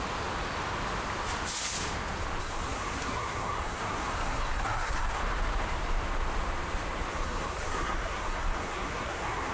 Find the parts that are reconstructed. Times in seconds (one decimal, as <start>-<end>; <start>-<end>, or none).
2.4-5.2; 7.1-9.5